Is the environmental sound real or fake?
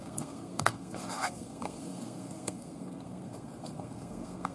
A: fake